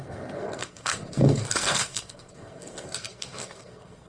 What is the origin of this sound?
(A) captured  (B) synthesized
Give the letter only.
B